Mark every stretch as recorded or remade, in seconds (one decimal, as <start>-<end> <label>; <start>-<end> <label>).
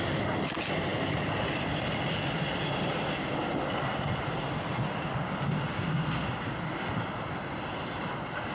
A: 0.0-8.5 recorded